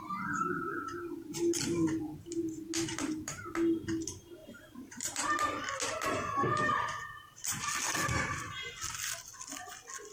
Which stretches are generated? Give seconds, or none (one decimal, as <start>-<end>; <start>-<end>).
2.9-3.5; 4.4-5.3